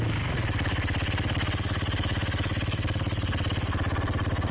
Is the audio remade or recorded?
recorded